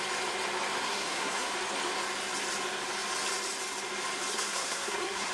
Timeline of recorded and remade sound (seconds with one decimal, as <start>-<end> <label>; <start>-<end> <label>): 0.0-0.8 recorded; 0.8-1.5 remade; 1.5-4.3 recorded; 4.3-5.3 remade